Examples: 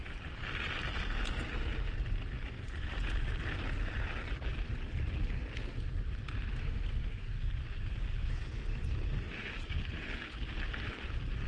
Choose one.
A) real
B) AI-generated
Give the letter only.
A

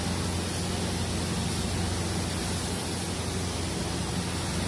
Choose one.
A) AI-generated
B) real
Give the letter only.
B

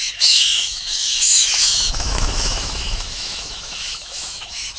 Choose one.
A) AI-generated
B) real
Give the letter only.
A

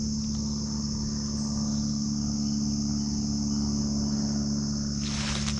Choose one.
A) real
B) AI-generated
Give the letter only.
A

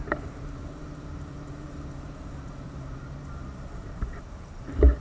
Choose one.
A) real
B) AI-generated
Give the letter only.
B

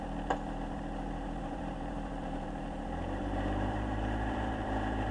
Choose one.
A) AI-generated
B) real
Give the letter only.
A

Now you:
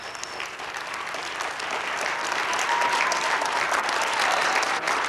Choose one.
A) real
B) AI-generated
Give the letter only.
A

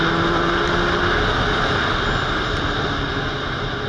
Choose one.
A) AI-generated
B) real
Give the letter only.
B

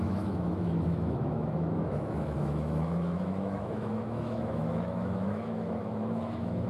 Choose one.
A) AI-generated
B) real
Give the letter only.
A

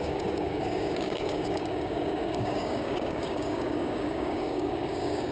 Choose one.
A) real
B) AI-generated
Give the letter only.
B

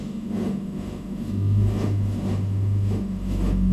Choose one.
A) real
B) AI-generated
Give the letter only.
B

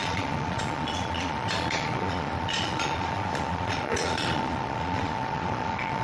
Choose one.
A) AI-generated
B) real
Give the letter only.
A